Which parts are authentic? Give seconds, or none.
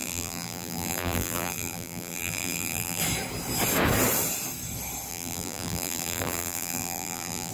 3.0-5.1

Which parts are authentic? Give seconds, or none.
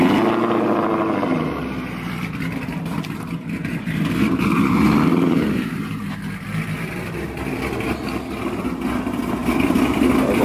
0.0-2.7; 6.0-9.4; 10.0-10.4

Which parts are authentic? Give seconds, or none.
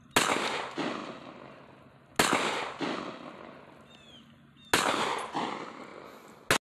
0.0-6.7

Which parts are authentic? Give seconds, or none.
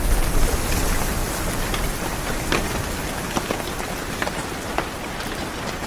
1.2-4.7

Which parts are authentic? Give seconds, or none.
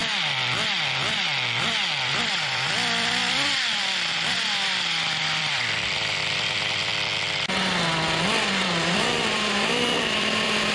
0.0-2.1; 6.9-8.5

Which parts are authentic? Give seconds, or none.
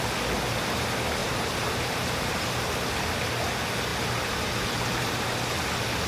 0.0-1.2; 2.3-6.1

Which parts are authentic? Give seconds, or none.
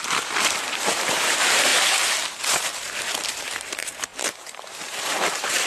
none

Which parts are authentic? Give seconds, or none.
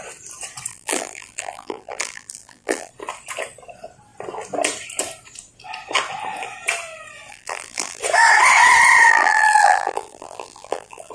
0.0-0.7; 2.9-7.3; 8.0-9.1